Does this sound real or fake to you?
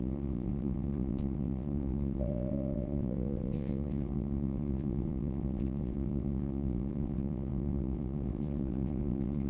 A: fake